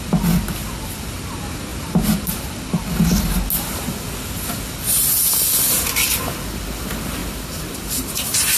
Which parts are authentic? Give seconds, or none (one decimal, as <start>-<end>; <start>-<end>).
0.0-1.7; 2.3-7.2

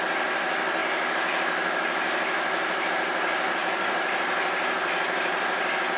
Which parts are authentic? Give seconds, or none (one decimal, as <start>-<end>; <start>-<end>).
0.0-3.6

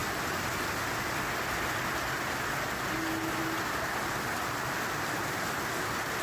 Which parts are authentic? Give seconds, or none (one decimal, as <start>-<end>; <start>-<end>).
0.0-3.7

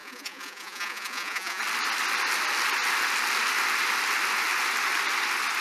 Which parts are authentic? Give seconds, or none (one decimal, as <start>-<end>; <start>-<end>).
1.6-5.6

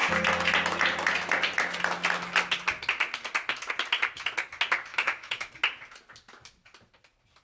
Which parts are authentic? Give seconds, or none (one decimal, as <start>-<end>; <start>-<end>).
0.0-4.9; 5.5-7.4

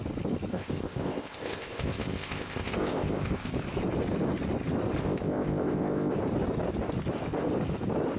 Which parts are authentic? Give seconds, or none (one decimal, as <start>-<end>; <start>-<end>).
0.0-0.5; 3.5-5.0; 6.1-8.2

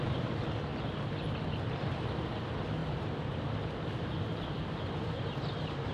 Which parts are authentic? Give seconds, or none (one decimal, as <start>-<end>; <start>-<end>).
0.0-5.9